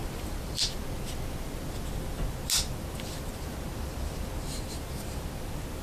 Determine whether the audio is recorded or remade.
recorded